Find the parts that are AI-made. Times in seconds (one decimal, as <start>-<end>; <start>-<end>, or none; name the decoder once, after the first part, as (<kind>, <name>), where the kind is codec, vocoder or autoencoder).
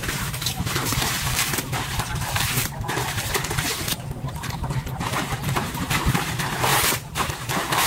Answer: 0.0-7.9 (vocoder, BigVGAN v2)